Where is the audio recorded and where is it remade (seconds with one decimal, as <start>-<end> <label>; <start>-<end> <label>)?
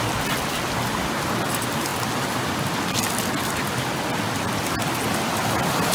0.0-5.9 recorded